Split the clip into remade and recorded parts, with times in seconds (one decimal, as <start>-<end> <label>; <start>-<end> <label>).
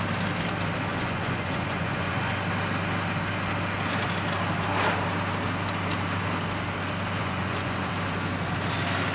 0.0-0.9 recorded; 0.9-2.4 remade; 2.4-7.2 recorded; 7.2-7.9 remade; 7.9-9.1 recorded